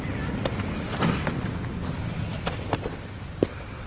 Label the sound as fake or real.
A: real